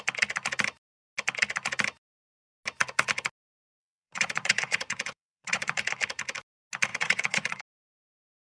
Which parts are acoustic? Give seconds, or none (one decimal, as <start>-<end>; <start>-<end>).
0.0-3.8; 5.8-6.9; 7.6-8.5